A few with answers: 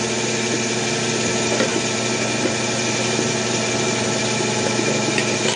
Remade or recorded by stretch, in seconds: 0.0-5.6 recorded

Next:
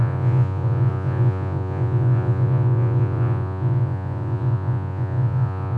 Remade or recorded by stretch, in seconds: 0.0-5.8 remade

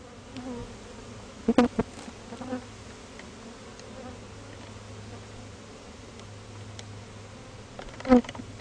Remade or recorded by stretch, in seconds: 0.0-8.6 recorded

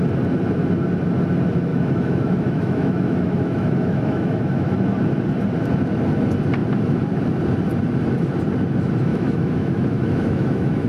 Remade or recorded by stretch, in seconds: 0.0-1.7 recorded; 1.7-4.7 remade; 4.7-9.1 recorded; 9.1-10.9 remade